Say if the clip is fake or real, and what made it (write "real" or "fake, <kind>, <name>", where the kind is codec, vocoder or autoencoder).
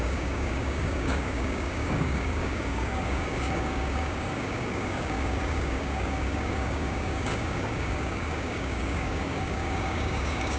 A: fake, codec, DAC